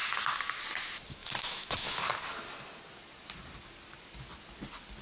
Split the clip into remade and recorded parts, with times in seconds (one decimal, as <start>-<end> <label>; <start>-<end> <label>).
0.0-1.2 recorded; 1.2-2.0 remade; 2.0-5.0 recorded